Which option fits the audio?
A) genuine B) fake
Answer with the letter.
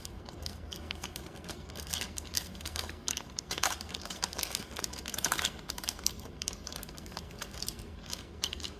B